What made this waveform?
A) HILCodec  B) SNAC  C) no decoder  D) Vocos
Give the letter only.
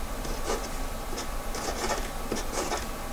C